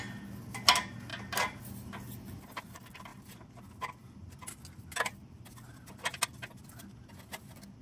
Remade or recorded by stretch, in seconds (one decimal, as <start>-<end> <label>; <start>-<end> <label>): 0.0-7.8 recorded